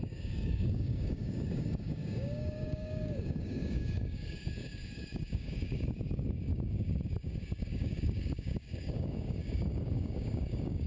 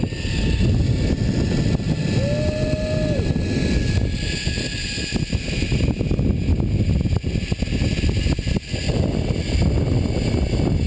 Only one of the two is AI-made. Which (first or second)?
first